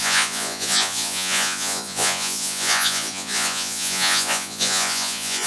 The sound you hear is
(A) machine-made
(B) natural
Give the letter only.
A